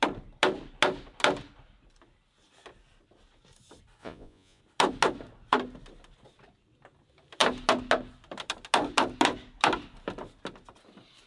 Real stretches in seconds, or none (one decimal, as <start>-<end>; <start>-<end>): 0.0-4.0; 4.6-11.3